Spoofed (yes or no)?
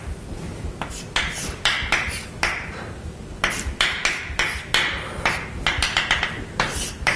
no